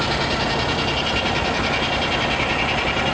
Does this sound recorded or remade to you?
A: recorded